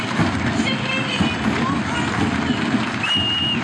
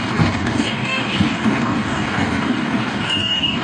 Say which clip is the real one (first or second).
first